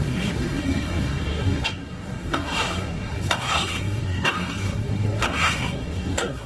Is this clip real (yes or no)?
no